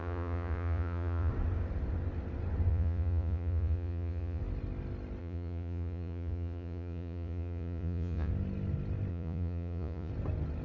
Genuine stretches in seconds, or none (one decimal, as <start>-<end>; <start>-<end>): 1.3-2.7; 4.4-5.2; 8.3-9.1; 10.1-10.6